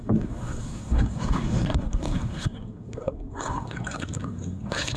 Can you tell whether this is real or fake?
fake